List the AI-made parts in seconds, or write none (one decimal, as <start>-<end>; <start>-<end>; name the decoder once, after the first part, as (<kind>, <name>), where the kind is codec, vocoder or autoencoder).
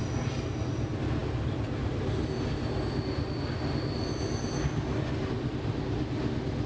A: none